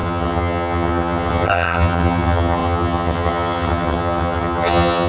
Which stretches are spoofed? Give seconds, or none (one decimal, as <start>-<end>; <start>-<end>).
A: 0.0-5.1